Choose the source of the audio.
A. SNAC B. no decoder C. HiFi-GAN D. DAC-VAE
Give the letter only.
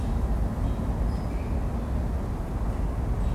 B